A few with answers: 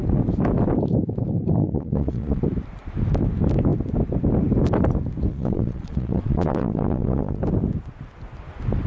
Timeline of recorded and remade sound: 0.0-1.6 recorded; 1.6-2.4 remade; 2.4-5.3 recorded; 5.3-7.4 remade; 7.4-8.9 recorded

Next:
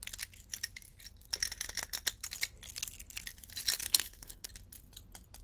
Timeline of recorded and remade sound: 0.0-3.8 recorded; 3.8-4.5 remade; 4.5-5.4 recorded

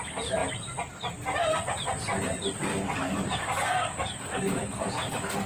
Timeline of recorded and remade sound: 0.0-2.7 recorded; 2.7-5.5 remade

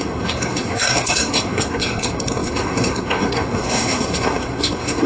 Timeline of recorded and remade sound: 0.0-5.1 remade